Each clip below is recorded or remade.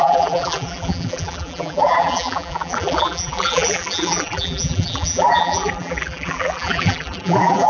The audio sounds remade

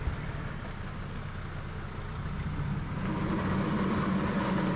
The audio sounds recorded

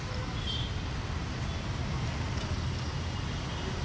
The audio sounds recorded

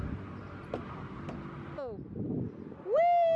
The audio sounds recorded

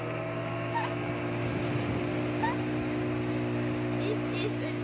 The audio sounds recorded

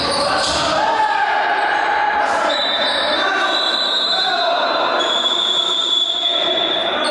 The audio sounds remade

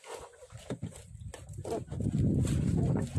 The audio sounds recorded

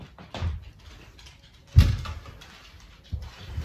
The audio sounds recorded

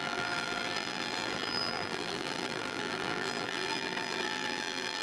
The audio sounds remade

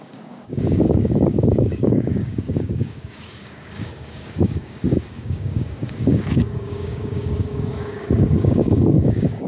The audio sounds remade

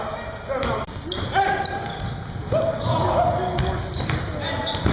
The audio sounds recorded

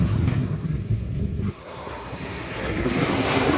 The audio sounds remade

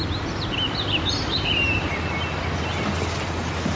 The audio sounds recorded